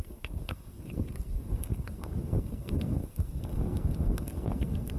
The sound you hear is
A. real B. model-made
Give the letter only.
B